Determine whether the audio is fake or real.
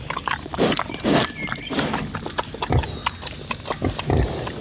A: real